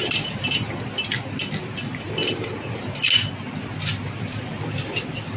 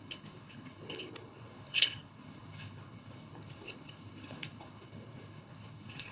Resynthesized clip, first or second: second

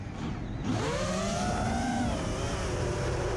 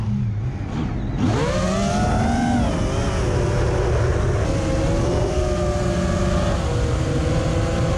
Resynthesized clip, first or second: first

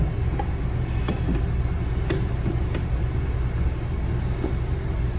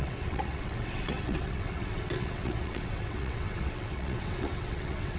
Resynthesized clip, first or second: second